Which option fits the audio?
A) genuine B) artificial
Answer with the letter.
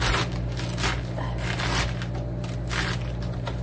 A